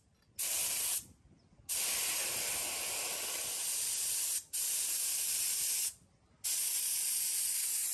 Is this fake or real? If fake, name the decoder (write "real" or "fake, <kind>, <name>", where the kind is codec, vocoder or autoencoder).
real